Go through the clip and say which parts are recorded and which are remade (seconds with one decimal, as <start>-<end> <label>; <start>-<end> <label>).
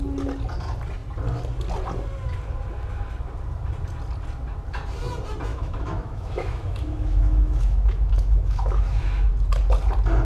0.0-5.5 recorded; 5.5-9.3 remade; 9.3-10.2 recorded